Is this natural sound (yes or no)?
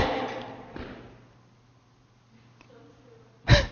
yes